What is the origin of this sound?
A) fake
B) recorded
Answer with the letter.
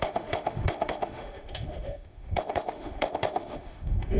A